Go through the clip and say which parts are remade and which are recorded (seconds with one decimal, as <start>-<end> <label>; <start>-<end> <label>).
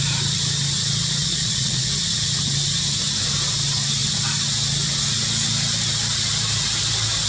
0.0-1.2 recorded; 1.2-1.9 remade; 1.9-7.3 recorded